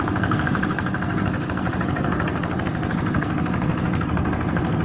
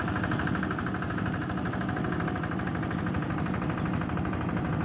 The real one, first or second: second